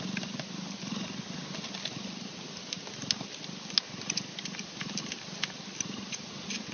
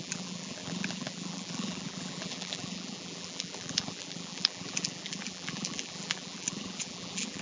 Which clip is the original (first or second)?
first